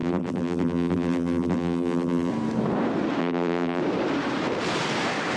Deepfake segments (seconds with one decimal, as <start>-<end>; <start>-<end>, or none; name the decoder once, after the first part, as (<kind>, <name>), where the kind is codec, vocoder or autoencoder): 0.0-2.3 (vocoder, BigVGAN v2); 3.2-3.8